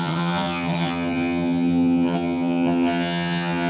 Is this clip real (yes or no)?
no